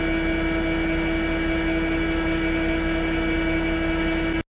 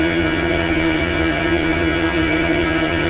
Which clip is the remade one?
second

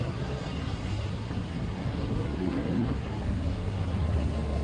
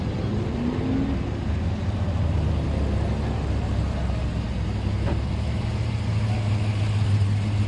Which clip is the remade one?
first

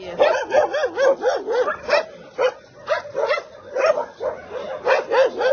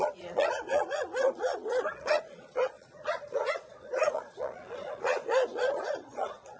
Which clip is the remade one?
second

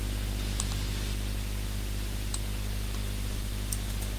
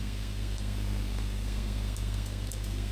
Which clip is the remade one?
second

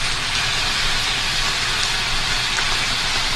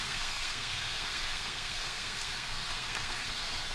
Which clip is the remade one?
second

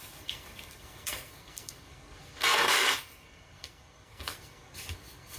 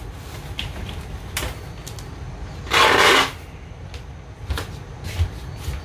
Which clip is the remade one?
first